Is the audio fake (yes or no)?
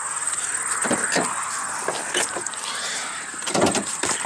yes